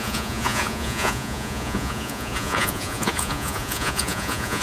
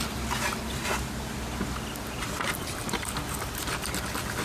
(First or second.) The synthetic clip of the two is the first